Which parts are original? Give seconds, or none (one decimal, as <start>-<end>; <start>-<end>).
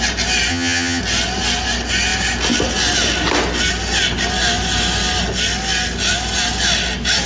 0.0-0.5; 1.0-7.3